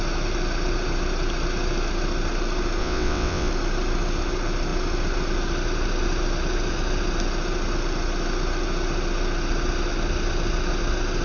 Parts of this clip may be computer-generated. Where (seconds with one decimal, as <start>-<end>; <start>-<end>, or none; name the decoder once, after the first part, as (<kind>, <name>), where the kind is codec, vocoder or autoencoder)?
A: 2.8-3.5 (vocoder, WaveNeXt)